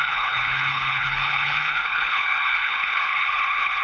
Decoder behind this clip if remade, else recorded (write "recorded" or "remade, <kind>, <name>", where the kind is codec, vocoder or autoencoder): remade, codec, HILCodec